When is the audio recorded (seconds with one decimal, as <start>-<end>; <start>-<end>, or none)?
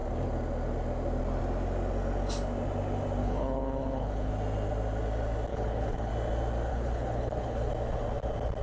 0.0-3.2; 4.3-5.5; 6.1-6.7; 7.7-8.6